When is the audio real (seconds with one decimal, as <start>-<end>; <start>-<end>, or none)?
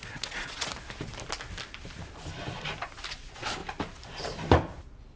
0.7-3.1; 3.6-5.2